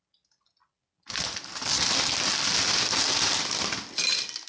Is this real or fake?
real